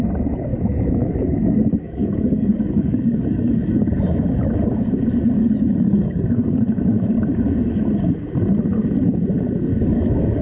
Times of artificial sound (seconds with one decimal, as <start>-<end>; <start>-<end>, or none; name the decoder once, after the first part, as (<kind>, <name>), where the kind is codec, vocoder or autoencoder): 0.5-4.0 (codec, DAC); 5.4-6.8; 9.7-10.4